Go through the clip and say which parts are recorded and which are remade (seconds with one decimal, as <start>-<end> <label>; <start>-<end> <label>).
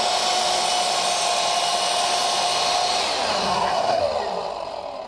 0.0-3.4 recorded; 3.4-4.0 remade; 4.0-5.1 recorded